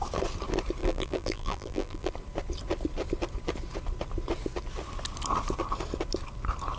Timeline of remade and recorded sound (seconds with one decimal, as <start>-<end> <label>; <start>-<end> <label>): 0.0-0.8 recorded; 0.8-2.1 remade; 2.1-6.8 recorded